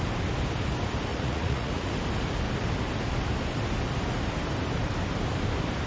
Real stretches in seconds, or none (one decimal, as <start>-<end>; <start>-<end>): 0.0-1.1; 1.9-5.9

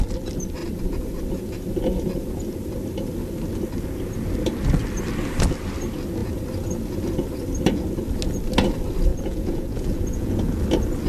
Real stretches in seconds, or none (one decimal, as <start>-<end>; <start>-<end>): 0.0-9.1; 10.6-11.1

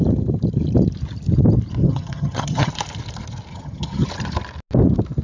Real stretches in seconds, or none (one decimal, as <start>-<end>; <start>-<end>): 0.0-1.8; 2.7-3.5; 4.1-5.2